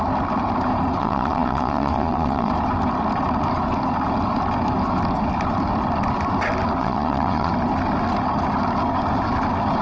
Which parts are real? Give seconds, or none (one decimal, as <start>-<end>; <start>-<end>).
0.0-1.0; 2.5-6.8; 7.5-9.8